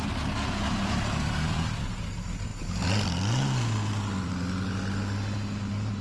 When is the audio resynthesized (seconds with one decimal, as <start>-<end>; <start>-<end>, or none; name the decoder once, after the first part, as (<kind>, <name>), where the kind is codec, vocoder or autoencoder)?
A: none